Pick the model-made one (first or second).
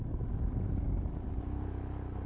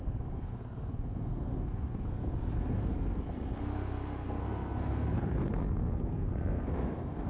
second